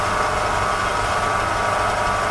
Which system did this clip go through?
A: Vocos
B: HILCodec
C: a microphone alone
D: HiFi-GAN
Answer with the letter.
C